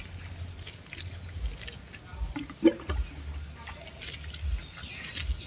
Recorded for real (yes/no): yes